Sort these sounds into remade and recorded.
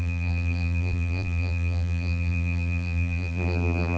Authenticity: remade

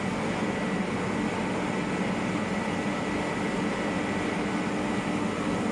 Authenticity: recorded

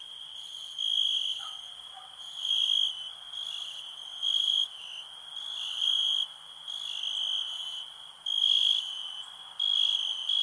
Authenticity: recorded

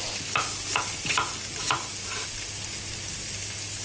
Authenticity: recorded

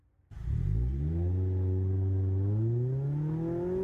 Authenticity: recorded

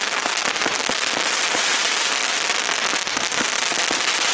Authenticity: remade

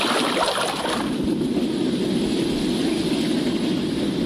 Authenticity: remade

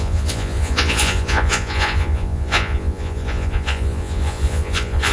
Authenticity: remade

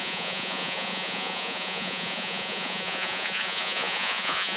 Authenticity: remade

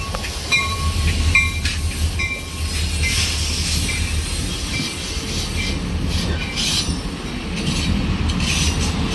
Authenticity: recorded